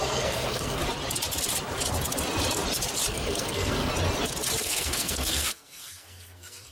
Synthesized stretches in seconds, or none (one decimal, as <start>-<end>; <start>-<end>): 0.0-0.8; 3.1-3.9; 4.6-6.7